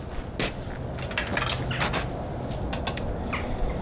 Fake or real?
real